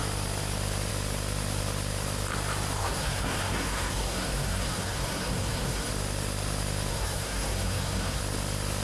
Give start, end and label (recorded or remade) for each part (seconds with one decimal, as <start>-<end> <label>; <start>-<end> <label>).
0.0-2.8 recorded; 2.8-5.9 remade; 5.9-6.9 recorded; 6.9-8.2 remade; 8.2-8.8 recorded